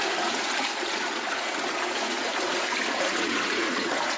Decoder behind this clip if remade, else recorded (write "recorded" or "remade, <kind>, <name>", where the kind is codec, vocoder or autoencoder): remade, vocoder, Vocos